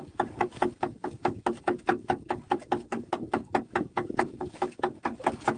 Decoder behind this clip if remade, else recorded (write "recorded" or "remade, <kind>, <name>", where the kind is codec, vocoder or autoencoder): remade, codec, DAC